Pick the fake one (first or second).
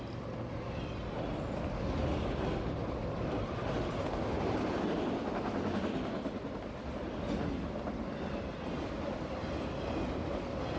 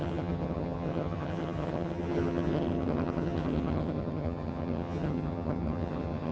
second